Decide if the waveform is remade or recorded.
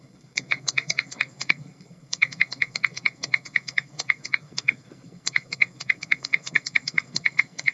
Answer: remade